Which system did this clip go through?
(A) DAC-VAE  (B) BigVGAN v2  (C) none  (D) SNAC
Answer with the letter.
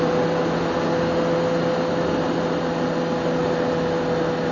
C